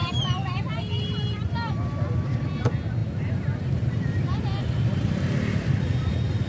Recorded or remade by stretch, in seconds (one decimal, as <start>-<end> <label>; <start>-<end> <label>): 0.0-6.5 remade